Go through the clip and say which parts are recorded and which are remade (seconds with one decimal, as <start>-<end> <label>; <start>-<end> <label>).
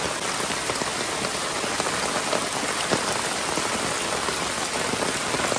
0.0-5.6 recorded